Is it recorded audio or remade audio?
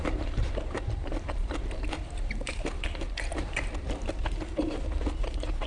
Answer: remade